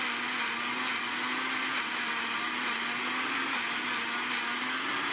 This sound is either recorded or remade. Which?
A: recorded